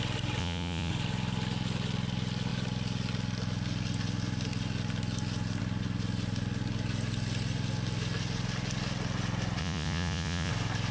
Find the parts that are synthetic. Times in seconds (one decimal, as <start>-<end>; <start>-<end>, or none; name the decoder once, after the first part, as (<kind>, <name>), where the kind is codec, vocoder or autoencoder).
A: 0.4-0.9 (vocoder, Vocos); 9.6-10.5